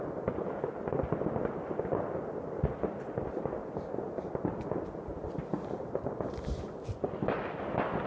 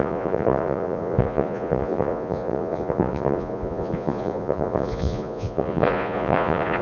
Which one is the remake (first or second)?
second